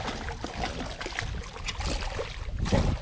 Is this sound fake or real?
real